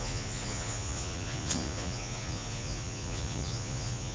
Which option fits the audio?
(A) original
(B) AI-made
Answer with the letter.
B